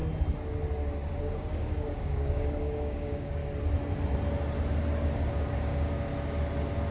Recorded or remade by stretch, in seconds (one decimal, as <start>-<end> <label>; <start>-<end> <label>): 0.0-1.2 recorded; 1.2-3.4 remade; 3.4-5.3 recorded; 5.3-6.1 remade; 6.1-6.9 recorded